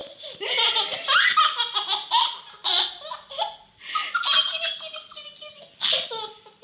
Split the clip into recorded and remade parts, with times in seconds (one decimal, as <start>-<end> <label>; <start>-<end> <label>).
0.0-6.6 recorded